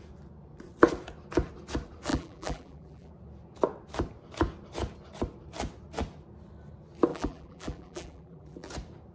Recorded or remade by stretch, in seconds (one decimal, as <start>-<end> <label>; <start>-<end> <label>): 0.0-2.1 recorded; 2.1-3.1 remade; 3.1-7.1 recorded; 7.1-8.7 remade; 8.7-9.1 recorded